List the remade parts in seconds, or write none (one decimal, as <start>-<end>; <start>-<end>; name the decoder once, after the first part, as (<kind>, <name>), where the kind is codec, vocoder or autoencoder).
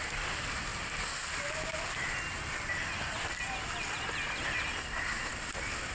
none